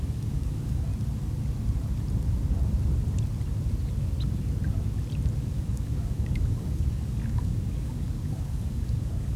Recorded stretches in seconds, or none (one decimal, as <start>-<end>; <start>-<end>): 0.9-5.4